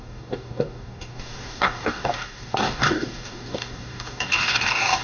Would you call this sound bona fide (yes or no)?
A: no